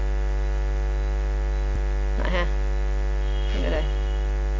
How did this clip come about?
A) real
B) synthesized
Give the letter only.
A